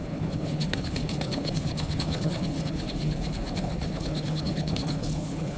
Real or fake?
fake